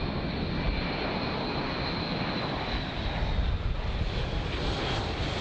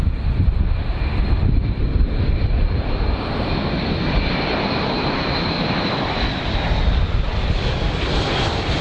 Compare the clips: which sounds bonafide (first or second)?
first